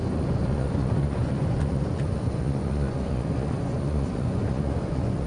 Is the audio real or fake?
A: fake